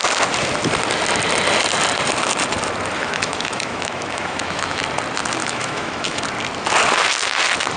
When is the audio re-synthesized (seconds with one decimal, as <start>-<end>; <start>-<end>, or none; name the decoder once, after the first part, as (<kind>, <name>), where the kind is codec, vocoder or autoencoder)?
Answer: 3.0-4.8 (autoencoder, DAC-VAE); 5.4-6.2